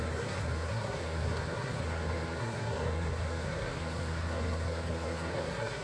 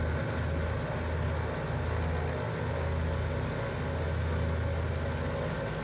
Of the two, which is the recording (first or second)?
second